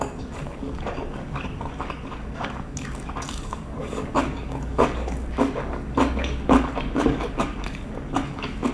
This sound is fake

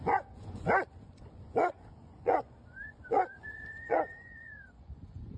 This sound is fake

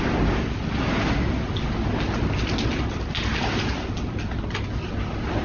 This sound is real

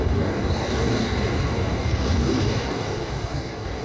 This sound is fake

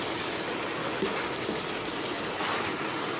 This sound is real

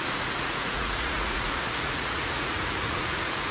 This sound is fake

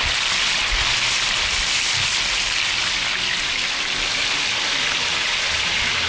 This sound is real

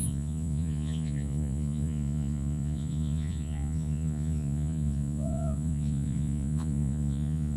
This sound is fake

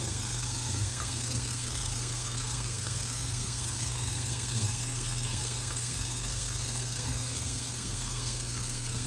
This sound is fake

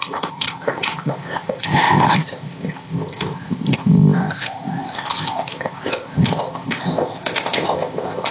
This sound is fake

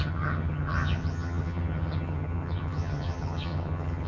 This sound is fake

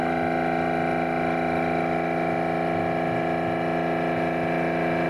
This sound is real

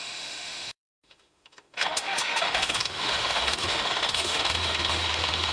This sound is fake